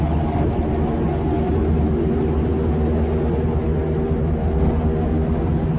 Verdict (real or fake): real